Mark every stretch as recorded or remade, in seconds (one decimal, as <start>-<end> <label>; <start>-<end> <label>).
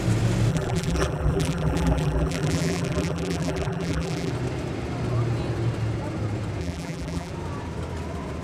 0.0-0.5 recorded; 0.5-4.3 remade; 4.3-6.6 recorded; 6.6-7.3 remade; 7.3-8.4 recorded